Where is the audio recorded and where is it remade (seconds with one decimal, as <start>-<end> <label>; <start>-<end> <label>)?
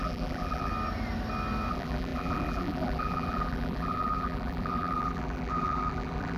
0.0-0.7 remade; 0.7-1.7 recorded; 1.7-6.4 remade